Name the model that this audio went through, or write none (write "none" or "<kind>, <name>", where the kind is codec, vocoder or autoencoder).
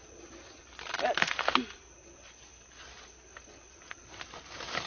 none